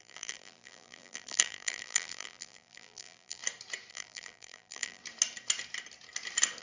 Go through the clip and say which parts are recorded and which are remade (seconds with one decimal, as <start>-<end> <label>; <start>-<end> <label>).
0.0-3.4 remade; 3.4-3.9 recorded; 3.9-5.0 remade; 5.0-6.6 recorded